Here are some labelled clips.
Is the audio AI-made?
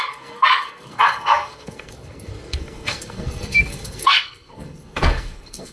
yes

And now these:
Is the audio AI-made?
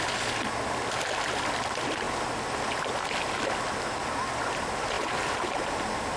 no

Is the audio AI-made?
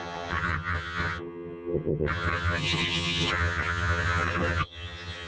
yes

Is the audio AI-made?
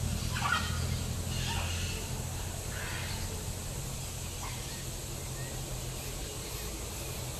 no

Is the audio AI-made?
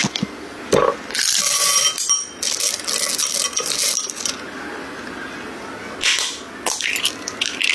no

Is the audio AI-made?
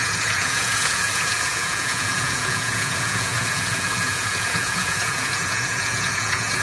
yes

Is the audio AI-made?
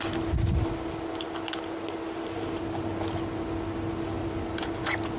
no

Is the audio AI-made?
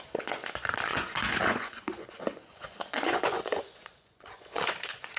yes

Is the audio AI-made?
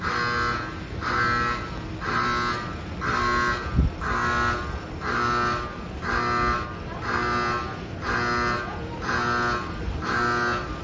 no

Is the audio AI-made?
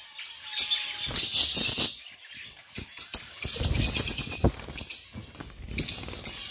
no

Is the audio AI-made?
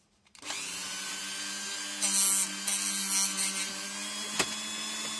no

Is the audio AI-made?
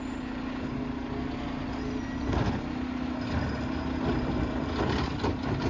no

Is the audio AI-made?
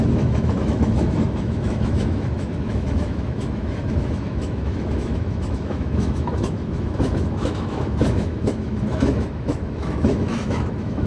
yes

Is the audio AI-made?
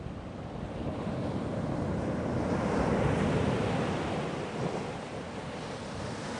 no